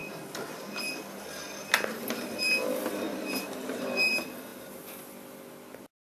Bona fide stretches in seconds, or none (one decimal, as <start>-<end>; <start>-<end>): 0.0-3.1; 3.8-6.1